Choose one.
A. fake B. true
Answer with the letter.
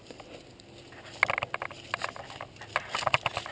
B